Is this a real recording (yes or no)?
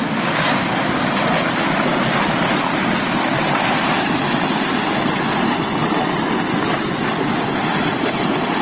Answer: yes